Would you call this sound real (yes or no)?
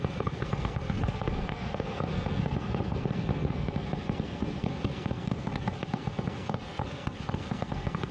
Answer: no